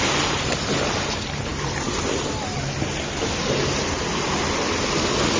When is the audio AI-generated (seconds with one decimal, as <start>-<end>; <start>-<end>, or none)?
none